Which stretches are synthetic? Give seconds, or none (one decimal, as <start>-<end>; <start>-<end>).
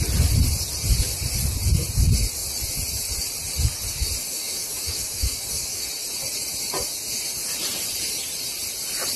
4.2-5.9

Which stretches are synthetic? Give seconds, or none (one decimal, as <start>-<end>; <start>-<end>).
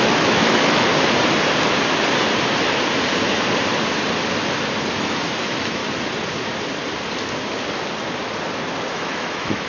0.0-0.9; 4.9-5.8; 8.9-9.7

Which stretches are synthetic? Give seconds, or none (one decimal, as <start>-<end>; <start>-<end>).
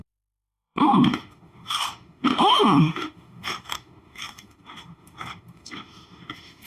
0.0-6.7